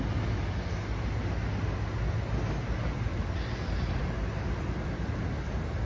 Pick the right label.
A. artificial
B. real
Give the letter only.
B